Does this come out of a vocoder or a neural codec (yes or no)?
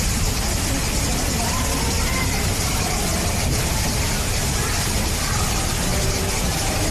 no